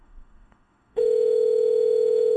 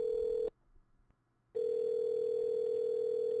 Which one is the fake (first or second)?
first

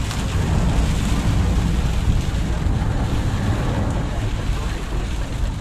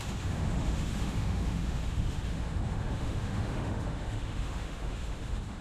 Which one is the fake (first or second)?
second